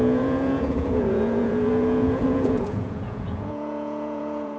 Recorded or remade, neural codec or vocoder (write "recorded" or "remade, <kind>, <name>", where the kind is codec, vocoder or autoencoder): remade, vocoder, Vocos